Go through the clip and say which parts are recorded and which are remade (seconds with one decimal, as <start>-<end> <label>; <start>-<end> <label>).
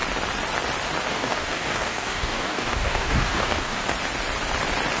0.0-1.1 recorded; 1.1-3.8 remade; 3.8-5.0 recorded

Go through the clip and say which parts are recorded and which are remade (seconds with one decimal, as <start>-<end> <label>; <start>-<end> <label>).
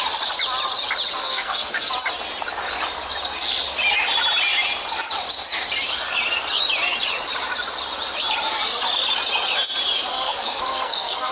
0.0-1.2 recorded; 1.2-1.9 remade; 1.9-10.1 recorded; 10.1-11.3 remade